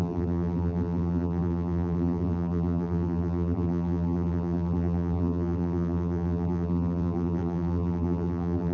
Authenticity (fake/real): fake